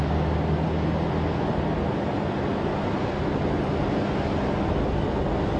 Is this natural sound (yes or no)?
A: yes